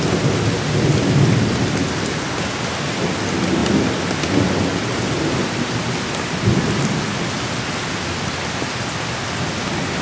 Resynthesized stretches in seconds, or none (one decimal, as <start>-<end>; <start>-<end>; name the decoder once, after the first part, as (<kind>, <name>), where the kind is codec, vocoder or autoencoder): none